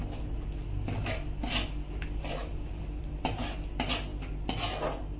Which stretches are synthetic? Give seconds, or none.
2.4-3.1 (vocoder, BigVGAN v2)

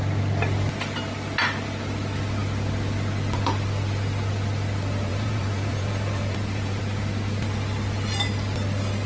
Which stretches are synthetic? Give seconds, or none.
5.1-6.8 (vocoder, Vocos)

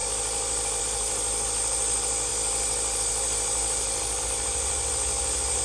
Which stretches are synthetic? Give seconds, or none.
none

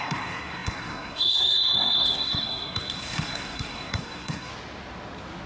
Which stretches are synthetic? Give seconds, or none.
0.0-4.5 (codec, SNAC)

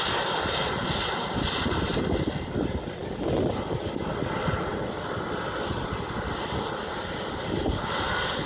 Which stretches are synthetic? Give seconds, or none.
none

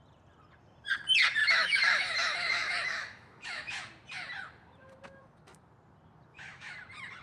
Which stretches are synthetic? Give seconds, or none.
1.4-3.8 (autoencoder, DAC-VAE); 6.3-6.8

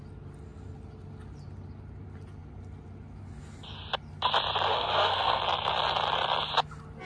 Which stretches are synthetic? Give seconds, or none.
4.7-5.4 (codec, SNAC)